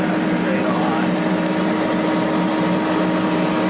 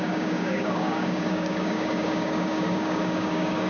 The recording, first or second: first